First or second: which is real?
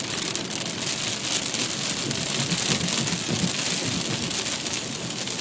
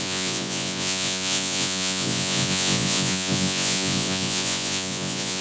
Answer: first